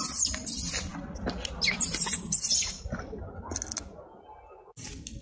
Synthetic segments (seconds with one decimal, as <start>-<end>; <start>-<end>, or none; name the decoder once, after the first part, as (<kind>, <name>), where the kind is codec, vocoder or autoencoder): none